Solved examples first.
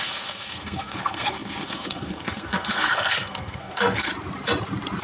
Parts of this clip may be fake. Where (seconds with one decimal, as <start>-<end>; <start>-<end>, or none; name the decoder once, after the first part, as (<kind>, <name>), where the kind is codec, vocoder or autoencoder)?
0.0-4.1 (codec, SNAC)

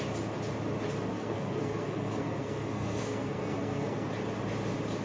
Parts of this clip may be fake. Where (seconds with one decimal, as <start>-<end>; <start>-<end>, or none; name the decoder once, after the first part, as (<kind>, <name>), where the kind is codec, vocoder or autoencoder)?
1.1-4.1 (codec, SNAC)

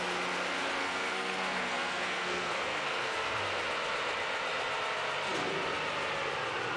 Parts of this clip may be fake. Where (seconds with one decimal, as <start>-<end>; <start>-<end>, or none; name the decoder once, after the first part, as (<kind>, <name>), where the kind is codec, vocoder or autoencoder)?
0.8-3.4 (codec, SNAC)

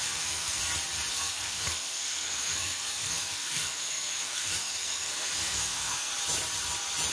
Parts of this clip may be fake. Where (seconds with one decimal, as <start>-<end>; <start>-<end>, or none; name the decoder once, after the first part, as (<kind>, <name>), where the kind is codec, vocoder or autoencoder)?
0.0-0.6 (codec, SNAC); 1.1-6.1

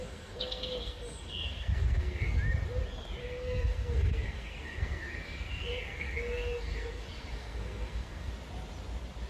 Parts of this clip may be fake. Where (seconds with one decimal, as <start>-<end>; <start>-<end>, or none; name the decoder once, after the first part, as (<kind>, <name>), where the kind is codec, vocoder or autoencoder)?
0.0-2.4 (codec, SNAC); 3.2-8.3